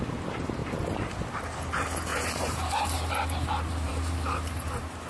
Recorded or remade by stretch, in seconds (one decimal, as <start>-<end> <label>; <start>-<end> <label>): 0.0-2.1 recorded; 2.1-5.1 remade